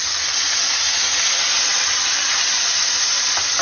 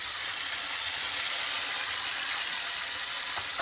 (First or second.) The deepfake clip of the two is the second